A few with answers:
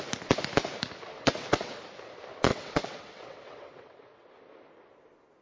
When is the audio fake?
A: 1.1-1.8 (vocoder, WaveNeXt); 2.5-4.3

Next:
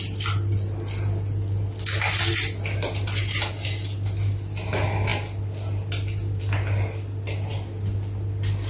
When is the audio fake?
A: none